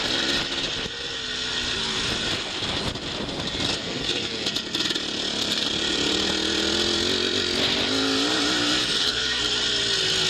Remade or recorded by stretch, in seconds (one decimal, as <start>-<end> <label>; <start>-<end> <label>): 0.0-3.8 recorded; 3.8-4.3 remade; 4.3-8.8 recorded; 8.8-9.4 remade; 9.4-10.3 recorded